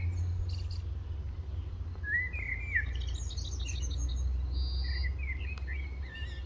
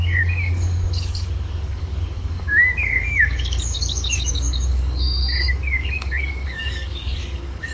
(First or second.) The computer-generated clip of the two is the second